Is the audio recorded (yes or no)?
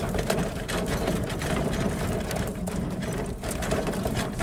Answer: no